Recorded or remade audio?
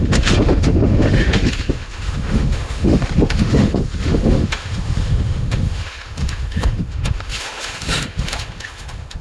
remade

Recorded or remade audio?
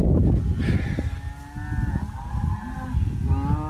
recorded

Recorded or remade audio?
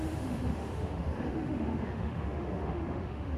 remade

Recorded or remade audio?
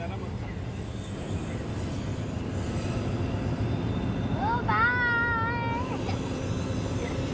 recorded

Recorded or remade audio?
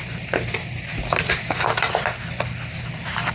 recorded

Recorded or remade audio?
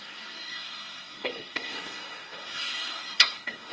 remade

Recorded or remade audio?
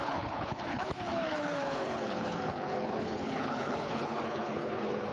remade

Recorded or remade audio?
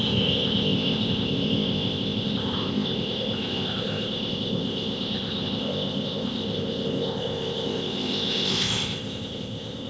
remade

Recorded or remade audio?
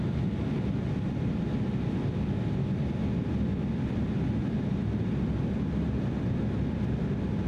recorded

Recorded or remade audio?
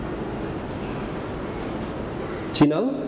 recorded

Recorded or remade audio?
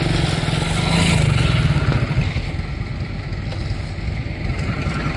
recorded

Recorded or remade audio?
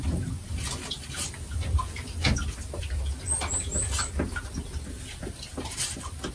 recorded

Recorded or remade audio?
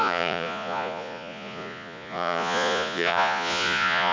remade